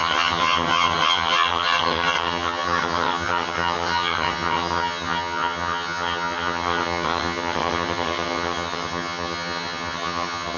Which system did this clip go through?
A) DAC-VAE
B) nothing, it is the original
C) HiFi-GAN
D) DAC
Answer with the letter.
C